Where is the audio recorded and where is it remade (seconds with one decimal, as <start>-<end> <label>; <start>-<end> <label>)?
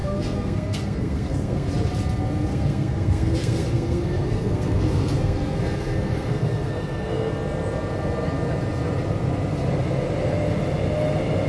0.0-1.7 remade; 1.7-2.5 recorded; 2.5-7.3 remade; 7.3-11.5 recorded